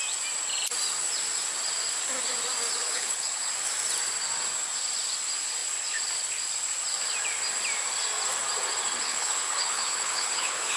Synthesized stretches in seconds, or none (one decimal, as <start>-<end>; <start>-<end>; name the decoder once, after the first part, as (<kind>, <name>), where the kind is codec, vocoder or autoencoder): 2.8-3.5 (codec, HILCodec); 9.0-10.8